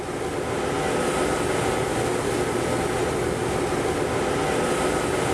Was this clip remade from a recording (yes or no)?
no